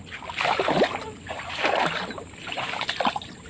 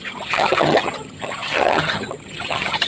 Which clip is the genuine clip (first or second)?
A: first